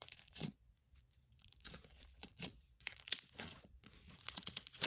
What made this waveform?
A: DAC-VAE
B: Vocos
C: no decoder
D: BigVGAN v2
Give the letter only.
B